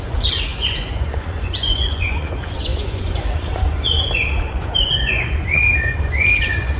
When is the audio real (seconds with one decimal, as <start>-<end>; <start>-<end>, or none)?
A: none

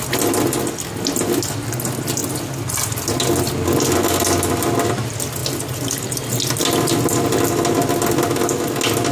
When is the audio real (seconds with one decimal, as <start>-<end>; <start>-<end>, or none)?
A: 0.0-9.1

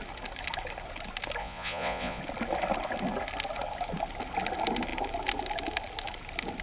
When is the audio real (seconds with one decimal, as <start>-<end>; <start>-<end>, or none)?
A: 0.0-1.4; 2.2-6.6